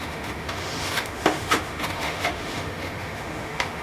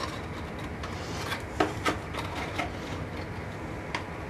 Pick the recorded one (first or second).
second